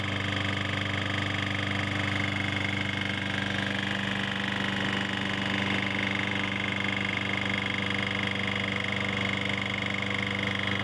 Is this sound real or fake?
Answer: real